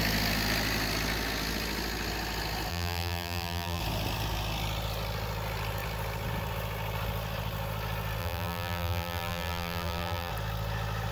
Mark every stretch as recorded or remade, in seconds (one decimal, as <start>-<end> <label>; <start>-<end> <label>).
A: 0.0-2.7 recorded; 2.7-3.8 remade; 3.8-8.2 recorded; 8.2-10.3 remade; 10.3-11.1 recorded